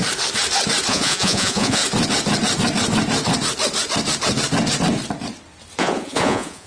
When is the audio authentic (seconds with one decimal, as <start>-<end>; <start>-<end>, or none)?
0.0-0.9; 1.8-5.8